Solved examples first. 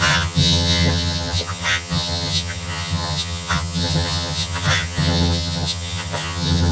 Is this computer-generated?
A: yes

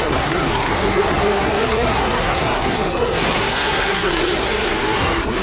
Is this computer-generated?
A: yes